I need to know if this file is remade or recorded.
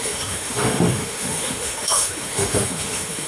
remade